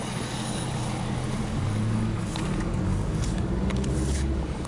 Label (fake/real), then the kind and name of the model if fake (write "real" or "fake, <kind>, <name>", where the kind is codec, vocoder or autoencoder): fake, codec, DAC